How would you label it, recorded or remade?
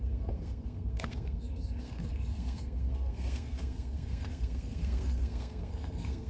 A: remade